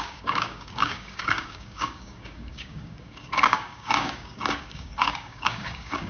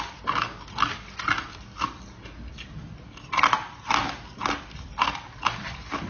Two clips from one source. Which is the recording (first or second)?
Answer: second